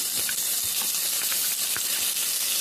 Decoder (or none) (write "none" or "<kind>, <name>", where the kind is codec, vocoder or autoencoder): none